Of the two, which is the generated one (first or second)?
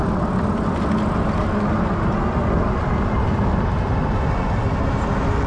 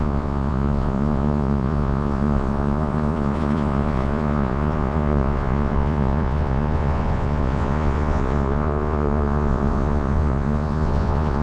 second